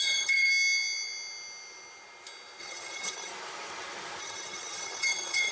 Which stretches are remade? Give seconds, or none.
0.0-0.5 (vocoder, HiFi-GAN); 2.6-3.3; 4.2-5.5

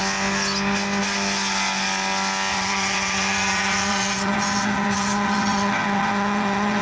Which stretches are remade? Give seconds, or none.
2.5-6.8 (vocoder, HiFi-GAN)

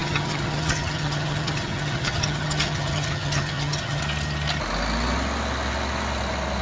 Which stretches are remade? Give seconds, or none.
0.0-4.0 (vocoder, HiFi-GAN)